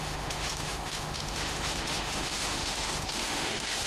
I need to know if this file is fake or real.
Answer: fake